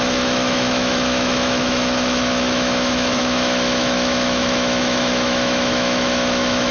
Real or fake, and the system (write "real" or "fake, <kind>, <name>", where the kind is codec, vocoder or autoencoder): fake, autoencoder, DAC-VAE